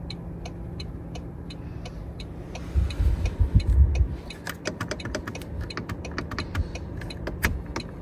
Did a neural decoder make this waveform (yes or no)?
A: no